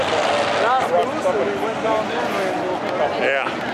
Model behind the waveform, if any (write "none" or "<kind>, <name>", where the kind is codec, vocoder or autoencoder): none